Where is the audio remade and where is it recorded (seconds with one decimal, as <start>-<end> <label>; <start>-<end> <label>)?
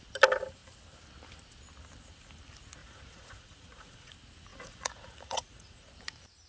0.0-2.8 recorded; 2.8-4.1 remade; 4.1-4.5 recorded; 4.5-5.9 remade; 5.9-6.5 recorded